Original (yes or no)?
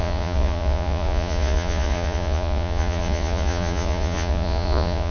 no